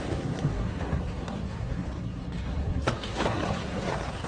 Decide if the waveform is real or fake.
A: fake